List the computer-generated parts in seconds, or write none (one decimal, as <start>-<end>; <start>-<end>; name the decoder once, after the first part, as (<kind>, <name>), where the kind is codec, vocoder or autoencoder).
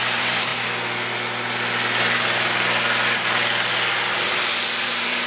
0.0-0.5 (vocoder, BigVGAN v2); 3.7-5.3